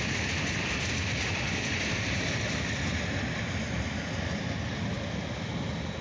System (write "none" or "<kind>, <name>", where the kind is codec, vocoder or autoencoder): none